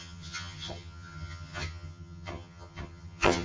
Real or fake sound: fake